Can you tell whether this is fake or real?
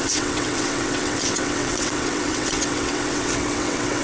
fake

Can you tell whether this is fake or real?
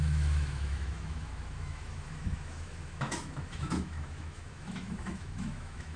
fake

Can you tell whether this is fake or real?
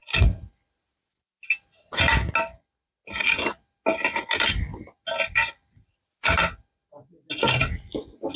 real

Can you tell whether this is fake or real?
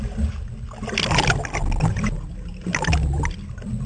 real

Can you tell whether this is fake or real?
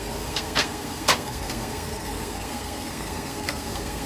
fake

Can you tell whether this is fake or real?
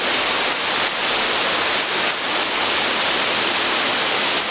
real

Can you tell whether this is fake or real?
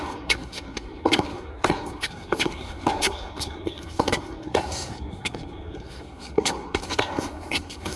fake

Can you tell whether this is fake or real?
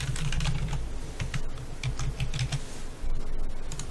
real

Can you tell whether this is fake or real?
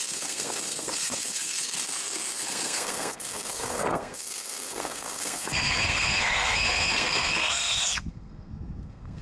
fake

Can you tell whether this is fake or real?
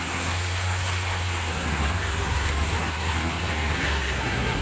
fake